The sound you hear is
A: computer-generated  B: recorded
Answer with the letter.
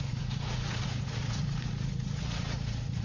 A